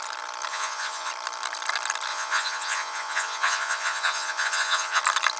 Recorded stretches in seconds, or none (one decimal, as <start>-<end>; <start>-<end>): 0.0-0.5; 1.1-2.1; 5.0-5.4